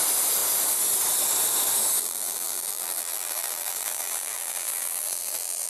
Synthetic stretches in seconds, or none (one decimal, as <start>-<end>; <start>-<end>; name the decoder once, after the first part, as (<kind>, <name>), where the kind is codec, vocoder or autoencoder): 2.0-5.7 (vocoder, BigVGAN v2)